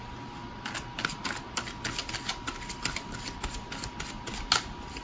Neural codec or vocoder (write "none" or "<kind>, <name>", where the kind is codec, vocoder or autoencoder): none